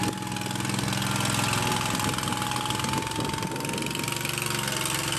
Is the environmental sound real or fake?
real